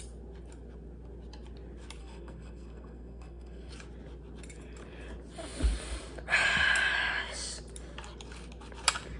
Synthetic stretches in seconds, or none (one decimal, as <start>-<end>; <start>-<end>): 2.0-3.7